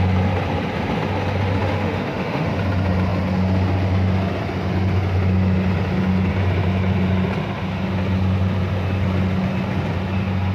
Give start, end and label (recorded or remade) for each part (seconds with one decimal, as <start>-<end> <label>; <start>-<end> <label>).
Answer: 0.0-1.6 recorded; 1.6-2.5 remade; 2.5-10.5 recorded